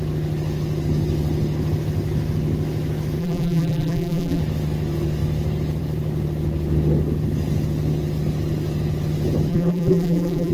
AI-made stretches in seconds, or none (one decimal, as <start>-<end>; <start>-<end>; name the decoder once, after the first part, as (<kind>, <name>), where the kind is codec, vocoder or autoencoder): 3.2-4.4 (vocoder, BigVGAN v2); 9.5-10.5